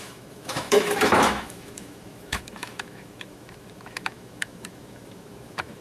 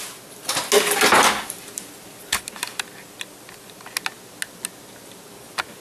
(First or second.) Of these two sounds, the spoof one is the first